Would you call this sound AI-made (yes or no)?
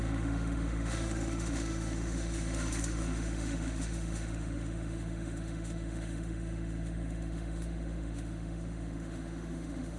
yes